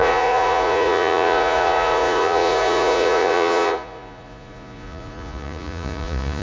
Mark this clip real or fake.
fake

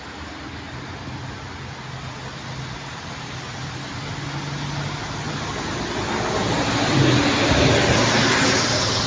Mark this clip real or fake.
real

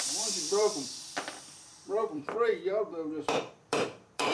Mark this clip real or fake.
fake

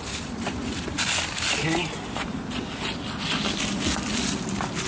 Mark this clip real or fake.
real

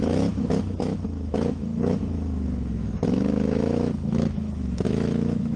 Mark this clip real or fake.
fake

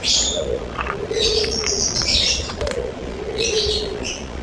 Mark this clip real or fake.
fake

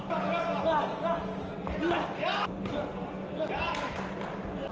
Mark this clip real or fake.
real